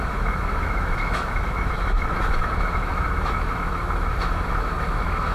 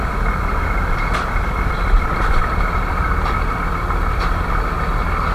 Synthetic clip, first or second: first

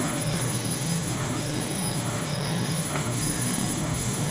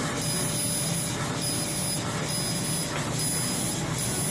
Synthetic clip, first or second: first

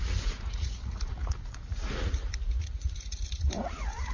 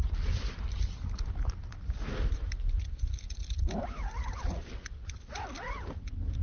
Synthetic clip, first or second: first